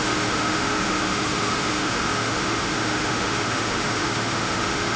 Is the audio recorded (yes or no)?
no